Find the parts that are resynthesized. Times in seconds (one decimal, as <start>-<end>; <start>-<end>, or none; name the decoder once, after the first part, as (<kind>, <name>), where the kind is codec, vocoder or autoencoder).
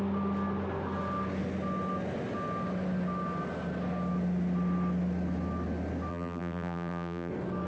6.1-7.3 (vocoder, BigVGAN v2)